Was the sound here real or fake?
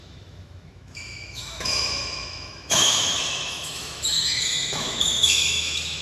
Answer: fake